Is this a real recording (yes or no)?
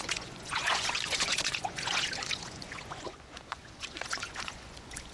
no